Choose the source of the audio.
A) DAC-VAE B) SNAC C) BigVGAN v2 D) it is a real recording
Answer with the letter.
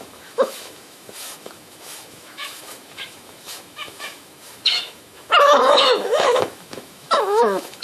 A